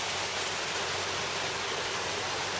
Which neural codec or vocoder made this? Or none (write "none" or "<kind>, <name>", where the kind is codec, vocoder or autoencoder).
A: none